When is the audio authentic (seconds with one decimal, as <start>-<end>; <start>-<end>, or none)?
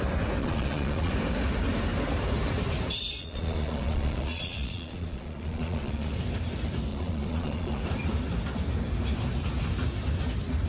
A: 0.0-0.4; 1.1-3.2; 6.1-6.9; 7.8-10.7